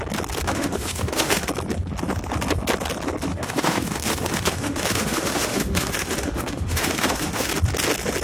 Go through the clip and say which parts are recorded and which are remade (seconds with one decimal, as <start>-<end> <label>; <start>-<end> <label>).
0.0-0.4 recorded; 0.4-1.5 remade; 1.5-3.3 recorded; 3.3-7.5 remade; 7.5-8.2 recorded